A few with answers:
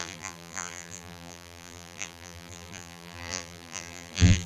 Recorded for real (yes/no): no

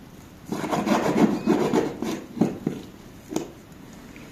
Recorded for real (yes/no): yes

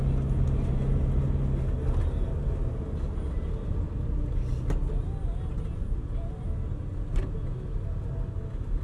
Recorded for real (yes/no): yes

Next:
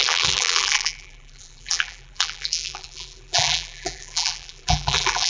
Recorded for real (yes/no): no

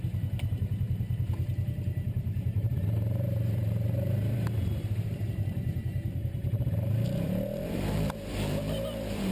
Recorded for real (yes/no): no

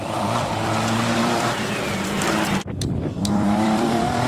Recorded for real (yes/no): no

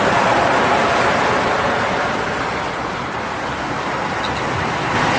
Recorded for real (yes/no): yes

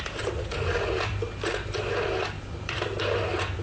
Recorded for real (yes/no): no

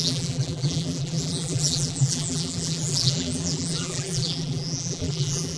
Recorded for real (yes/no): no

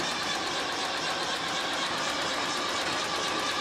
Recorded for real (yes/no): yes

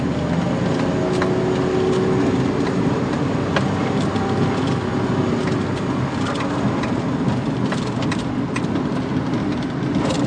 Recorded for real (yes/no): yes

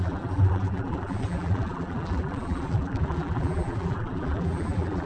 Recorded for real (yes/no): no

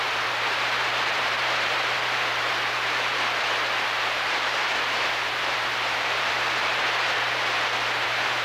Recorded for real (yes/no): no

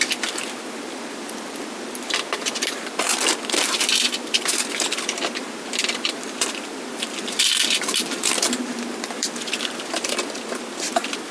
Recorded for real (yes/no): no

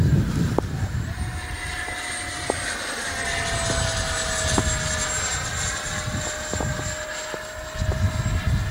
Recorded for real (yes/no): yes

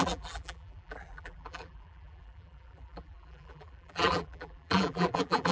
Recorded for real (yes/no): no